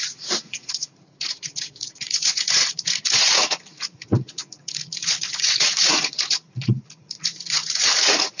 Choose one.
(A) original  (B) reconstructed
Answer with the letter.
B